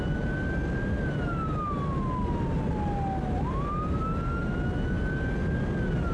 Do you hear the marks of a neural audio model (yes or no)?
no